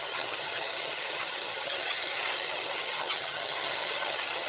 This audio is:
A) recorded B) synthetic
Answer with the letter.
B